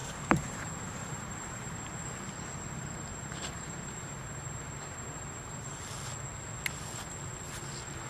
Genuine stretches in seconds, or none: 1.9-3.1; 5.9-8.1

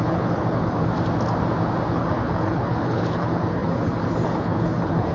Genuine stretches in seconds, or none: 0.9-1.9

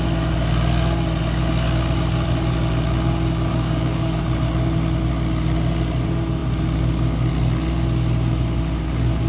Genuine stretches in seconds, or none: 0.0-3.5; 4.2-9.3

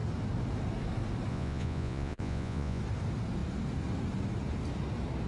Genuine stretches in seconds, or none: 0.0-1.3; 2.8-5.3

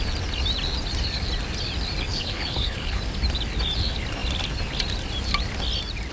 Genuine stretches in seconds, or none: 0.0-2.1; 3.0-6.1

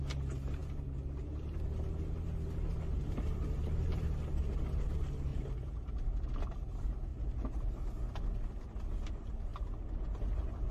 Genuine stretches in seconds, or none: 0.0-5.3; 6.0-10.7

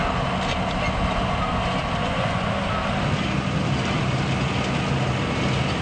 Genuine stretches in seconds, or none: 0.0-2.0; 2.5-5.8